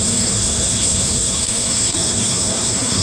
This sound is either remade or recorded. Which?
remade